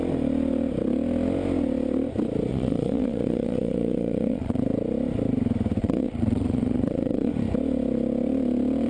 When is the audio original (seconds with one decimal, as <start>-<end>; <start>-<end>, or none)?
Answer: 0.0-2.5; 4.6-5.8; 7.3-8.9